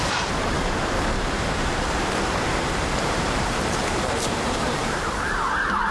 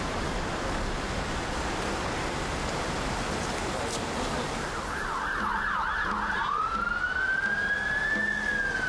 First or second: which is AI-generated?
first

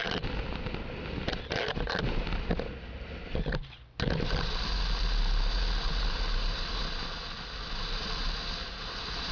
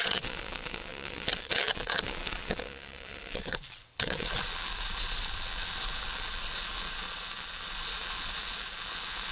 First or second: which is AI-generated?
second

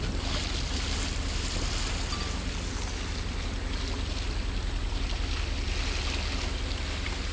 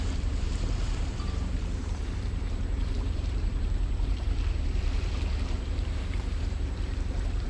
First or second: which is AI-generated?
second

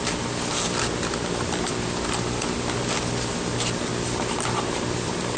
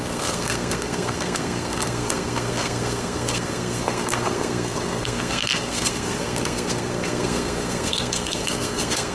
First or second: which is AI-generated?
second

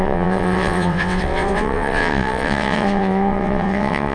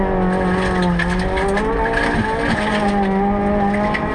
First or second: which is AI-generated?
first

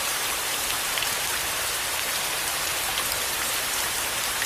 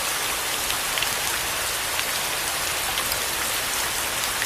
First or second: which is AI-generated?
first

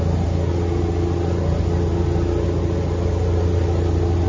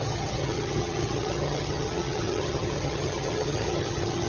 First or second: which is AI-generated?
second